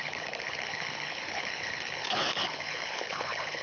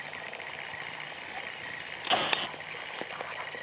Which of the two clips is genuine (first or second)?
second